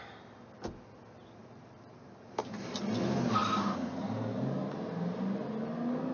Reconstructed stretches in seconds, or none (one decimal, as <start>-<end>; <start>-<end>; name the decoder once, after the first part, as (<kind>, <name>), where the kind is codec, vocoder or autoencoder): 1.4-2.8 (vocoder, BigVGAN v2)